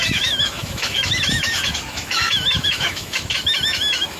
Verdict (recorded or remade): remade